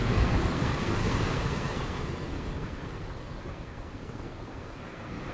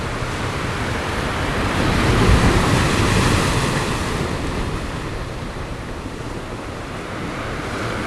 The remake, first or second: first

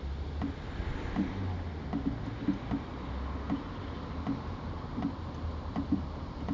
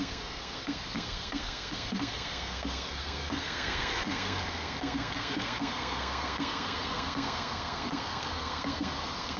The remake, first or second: second